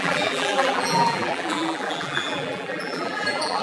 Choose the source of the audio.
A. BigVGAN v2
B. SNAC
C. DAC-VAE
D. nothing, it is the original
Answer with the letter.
A